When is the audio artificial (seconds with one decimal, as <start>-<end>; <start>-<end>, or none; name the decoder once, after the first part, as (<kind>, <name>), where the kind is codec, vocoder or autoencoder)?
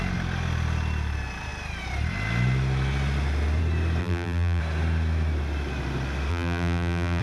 4.0-4.6 (vocoder, BigVGAN v2); 6.3-7.2